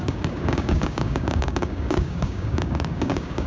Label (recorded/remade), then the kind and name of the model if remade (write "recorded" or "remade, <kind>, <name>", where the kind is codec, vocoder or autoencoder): remade, codec, DAC